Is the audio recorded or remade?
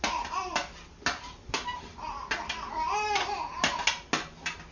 recorded